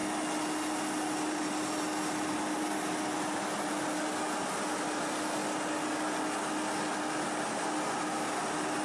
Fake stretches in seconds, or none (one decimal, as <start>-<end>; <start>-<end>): none